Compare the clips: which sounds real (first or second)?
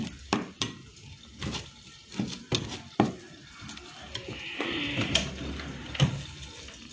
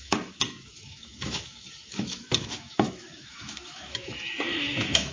first